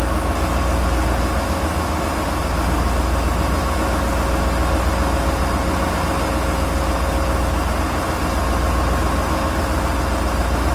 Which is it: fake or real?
real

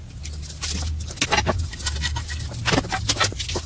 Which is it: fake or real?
real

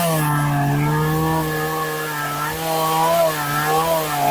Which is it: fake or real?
real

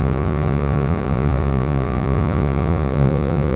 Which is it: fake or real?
fake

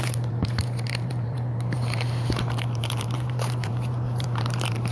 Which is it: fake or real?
fake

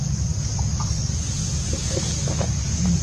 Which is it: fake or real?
real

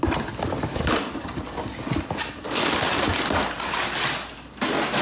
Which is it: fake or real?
fake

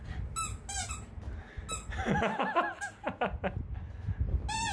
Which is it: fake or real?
real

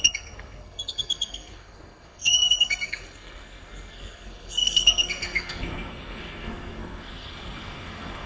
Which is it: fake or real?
fake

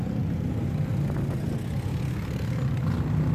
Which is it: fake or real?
real